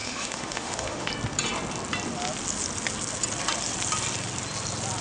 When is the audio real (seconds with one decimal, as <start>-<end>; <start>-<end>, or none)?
1.1-5.0